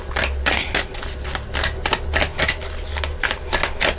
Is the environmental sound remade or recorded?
recorded